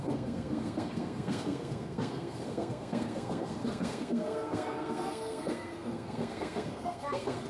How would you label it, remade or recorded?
remade